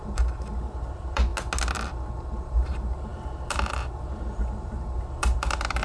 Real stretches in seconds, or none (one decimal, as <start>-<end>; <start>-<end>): 1.3-2.5